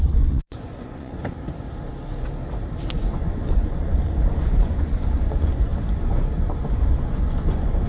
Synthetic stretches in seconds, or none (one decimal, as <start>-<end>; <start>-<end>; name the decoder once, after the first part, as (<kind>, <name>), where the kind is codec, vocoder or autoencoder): 0.0-1.2 (vocoder, Vocos); 2.9-7.9